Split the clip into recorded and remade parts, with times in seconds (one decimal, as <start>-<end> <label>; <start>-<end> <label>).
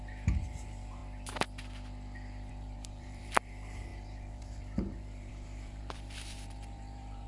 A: 0.0-1.0 remade; 1.0-2.5 recorded; 2.5-7.3 remade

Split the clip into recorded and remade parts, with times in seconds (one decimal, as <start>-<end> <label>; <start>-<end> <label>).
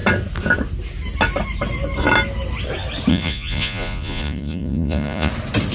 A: 0.0-3.1 recorded; 3.1-5.3 remade; 5.3-5.7 recorded